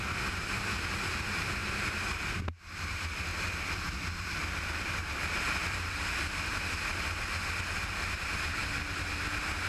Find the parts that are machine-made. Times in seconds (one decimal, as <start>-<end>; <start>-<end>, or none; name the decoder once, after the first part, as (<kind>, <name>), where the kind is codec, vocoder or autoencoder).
none